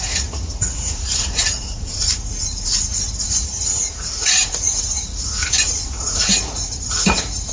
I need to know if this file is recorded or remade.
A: remade